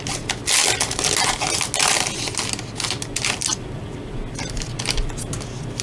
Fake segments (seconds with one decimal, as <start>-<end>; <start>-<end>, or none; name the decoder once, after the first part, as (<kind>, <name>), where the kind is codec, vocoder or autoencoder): none